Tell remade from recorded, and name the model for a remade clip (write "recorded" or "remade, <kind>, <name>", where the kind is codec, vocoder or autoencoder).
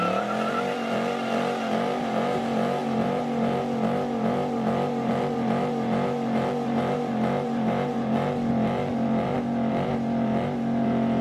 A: remade, vocoder, BigVGAN v2